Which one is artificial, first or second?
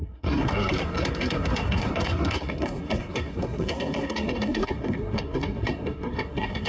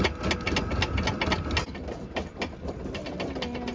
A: first